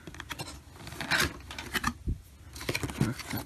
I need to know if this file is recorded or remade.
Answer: recorded